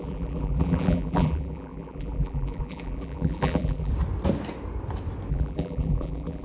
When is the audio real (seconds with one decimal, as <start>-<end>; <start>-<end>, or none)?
3.9-5.3